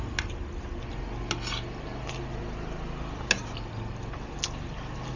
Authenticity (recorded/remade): recorded